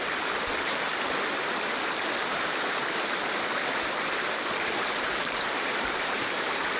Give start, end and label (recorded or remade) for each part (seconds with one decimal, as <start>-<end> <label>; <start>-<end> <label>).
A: 0.0-0.9 remade; 0.9-5.0 recorded; 5.0-6.8 remade